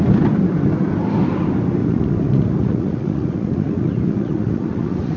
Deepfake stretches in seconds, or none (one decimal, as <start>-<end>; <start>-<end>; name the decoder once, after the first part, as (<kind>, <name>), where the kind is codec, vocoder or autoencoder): 1.8-5.2 (vocoder, Vocos)